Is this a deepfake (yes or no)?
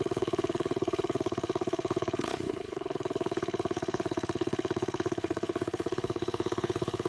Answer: yes